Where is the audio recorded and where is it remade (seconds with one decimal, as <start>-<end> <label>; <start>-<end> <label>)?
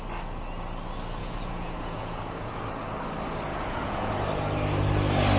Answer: 0.0-1.2 recorded; 1.2-2.6 remade; 2.6-3.5 recorded; 3.5-4.1 remade; 4.1-5.4 recorded